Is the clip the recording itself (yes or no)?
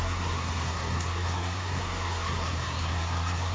no